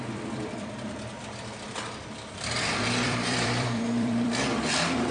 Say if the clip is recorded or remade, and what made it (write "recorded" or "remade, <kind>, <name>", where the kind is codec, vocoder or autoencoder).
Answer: remade, vocoder, BigVGAN v2